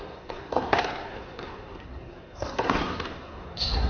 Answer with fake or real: fake